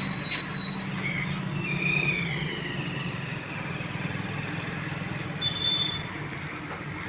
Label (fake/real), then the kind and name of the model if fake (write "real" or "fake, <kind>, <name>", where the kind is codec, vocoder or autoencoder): real